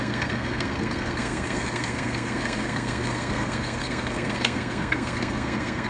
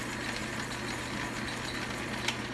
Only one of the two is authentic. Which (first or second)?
second